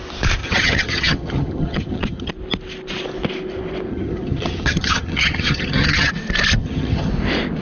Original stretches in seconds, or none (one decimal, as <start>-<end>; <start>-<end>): 0.0-0.4; 2.3-3.9; 6.1-6.6; 7.1-7.6

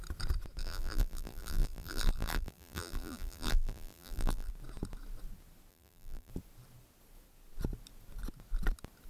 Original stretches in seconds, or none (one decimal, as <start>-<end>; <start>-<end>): 0.0-0.6; 4.5-5.7; 6.3-9.1

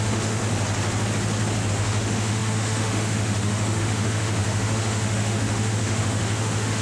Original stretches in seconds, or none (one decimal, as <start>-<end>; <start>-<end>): 0.4-1.7

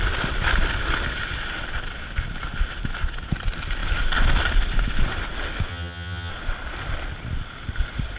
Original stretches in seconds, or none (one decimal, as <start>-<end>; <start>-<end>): 0.0-5.7; 6.3-8.2